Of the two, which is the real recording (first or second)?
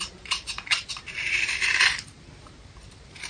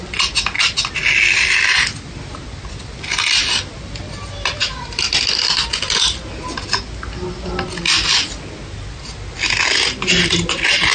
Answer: second